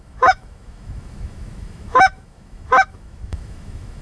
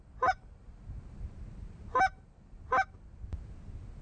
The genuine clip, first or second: second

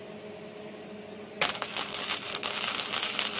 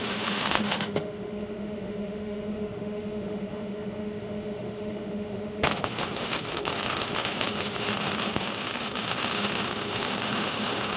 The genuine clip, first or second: first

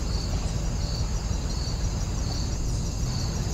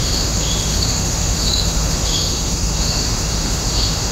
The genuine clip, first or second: first